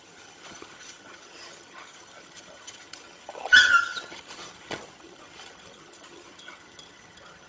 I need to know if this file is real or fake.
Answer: fake